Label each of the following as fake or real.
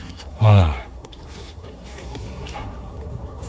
fake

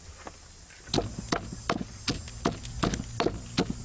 real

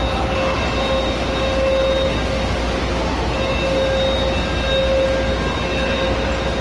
real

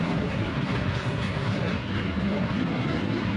fake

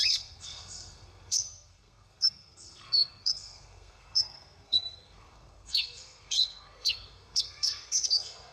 fake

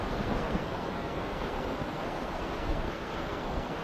fake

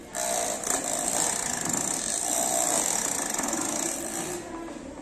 real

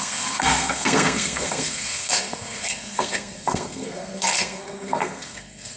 fake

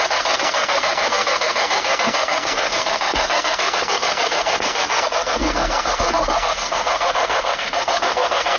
fake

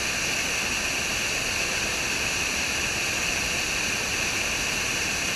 real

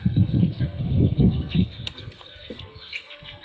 fake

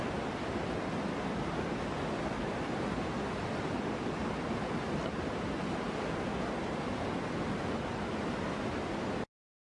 real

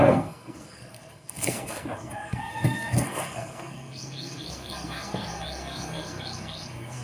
fake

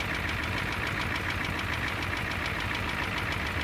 real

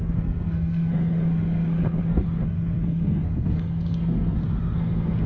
fake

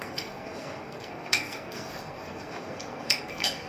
fake